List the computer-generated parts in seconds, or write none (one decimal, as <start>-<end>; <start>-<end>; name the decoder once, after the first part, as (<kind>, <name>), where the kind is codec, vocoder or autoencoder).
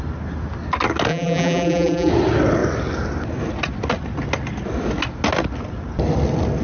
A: 1.1-2.1 (vocoder, BigVGAN v2)